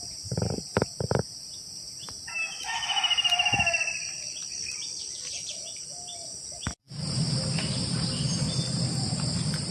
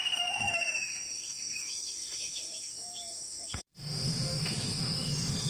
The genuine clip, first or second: first